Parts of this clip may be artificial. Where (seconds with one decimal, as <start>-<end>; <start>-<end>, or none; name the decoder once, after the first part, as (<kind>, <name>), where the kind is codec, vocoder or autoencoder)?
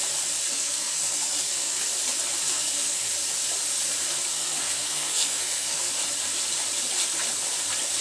0.5-1.8 (codec, SNAC); 2.5-3.1; 4.3-5.9